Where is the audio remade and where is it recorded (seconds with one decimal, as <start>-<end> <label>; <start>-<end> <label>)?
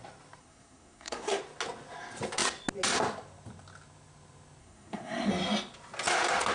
0.0-0.4 recorded; 0.4-1.4 remade; 1.4-4.6 recorded; 4.6-5.3 remade; 5.3-6.5 recorded